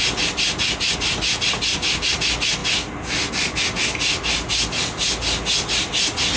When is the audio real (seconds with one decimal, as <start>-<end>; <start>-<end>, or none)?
0.0-6.4